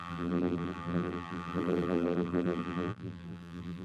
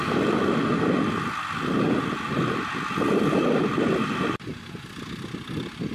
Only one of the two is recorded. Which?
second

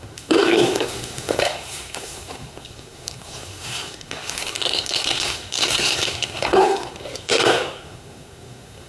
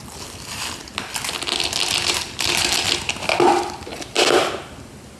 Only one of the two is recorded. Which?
second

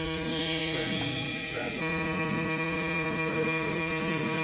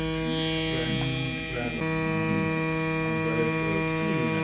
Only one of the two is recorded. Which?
second